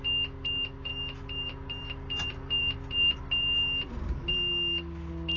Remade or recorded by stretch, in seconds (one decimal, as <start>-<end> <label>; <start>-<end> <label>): 0.0-0.9 recorded; 0.9-4.1 remade; 4.1-5.4 recorded